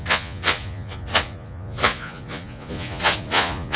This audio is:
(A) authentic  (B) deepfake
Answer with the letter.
B